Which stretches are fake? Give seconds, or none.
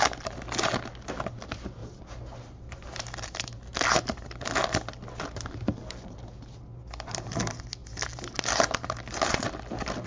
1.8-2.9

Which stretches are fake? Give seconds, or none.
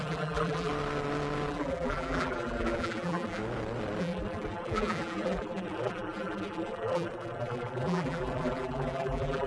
0.0-0.7; 1.5-3.4; 4.0-9.5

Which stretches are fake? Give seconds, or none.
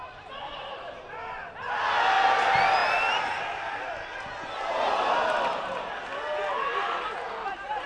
0.0-1.7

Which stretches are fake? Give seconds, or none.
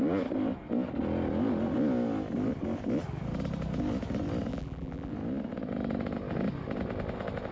4.5-5.1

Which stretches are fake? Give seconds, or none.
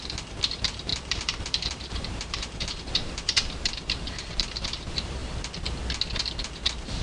0.0-5.2